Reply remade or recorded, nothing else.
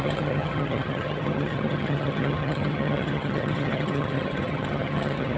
remade